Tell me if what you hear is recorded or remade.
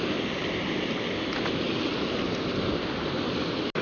recorded